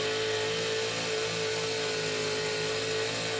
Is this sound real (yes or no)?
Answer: yes